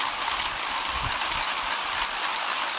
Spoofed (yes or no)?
no